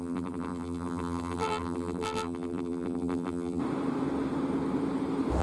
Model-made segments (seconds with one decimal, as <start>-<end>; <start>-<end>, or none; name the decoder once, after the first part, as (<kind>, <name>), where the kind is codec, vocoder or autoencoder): 0.0-3.6 (vocoder, BigVGAN v2)